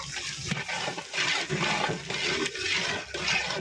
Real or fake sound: real